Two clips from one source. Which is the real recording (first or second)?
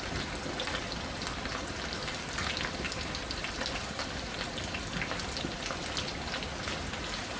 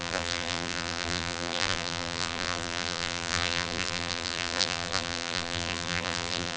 first